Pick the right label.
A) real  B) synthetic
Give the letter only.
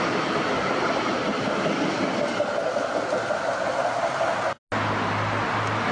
A